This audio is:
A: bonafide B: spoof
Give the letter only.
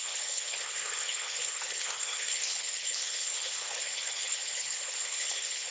B